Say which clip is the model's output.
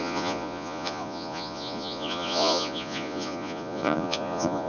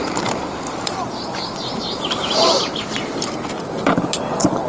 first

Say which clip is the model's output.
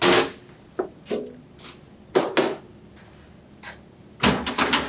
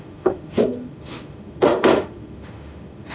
second